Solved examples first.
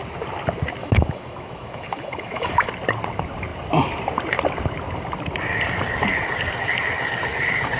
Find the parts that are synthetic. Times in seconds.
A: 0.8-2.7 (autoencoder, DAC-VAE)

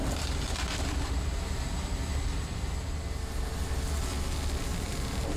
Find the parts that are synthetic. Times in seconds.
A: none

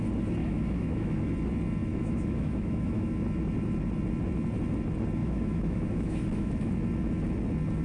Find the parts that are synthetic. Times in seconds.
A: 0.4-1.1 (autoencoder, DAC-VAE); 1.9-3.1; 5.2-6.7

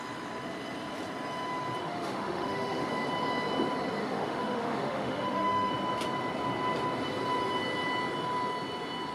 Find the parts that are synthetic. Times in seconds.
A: 1.8-2.9 (autoencoder, DAC-VAE); 4.0-5.7